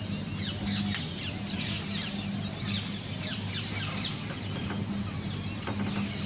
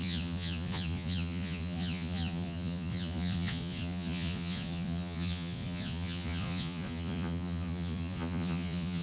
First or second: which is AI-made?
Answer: second